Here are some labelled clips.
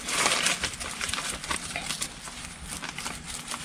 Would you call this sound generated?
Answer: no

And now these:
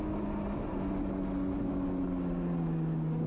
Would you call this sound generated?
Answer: no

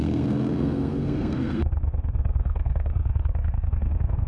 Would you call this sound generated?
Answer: yes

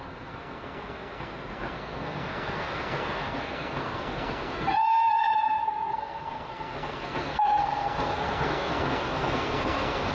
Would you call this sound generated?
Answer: yes